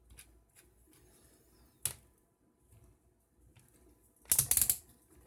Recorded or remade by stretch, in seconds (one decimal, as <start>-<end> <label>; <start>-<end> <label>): 0.0-5.3 recorded